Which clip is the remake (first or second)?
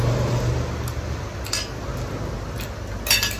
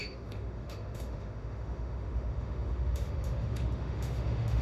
second